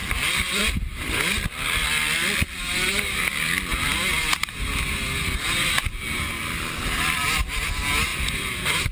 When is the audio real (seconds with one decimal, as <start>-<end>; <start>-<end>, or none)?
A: 1.0-8.1